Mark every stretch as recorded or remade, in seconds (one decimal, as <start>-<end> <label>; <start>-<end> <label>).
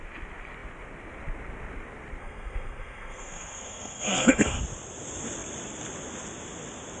0.0-2.2 recorded; 2.2-4.6 remade; 4.6-7.0 recorded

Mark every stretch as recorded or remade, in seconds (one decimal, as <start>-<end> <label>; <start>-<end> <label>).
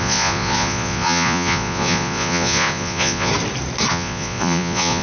0.0-3.3 remade; 3.3-3.9 recorded; 3.9-5.0 remade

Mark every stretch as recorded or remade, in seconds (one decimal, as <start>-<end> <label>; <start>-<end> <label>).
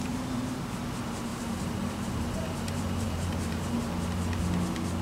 0.0-1.3 recorded; 1.3-3.8 remade; 3.8-5.0 recorded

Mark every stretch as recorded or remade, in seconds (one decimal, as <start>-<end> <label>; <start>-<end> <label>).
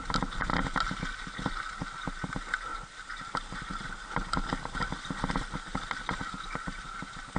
0.0-7.4 recorded